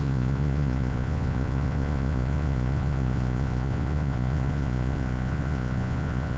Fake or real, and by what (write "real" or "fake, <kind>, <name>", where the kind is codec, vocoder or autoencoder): fake, vocoder, Vocos